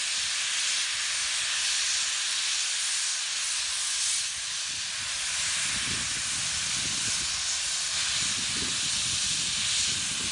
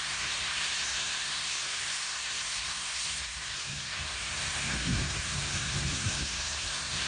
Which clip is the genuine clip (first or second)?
first